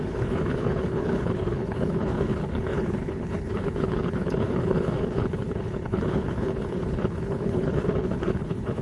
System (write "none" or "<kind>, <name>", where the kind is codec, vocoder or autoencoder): codec, HILCodec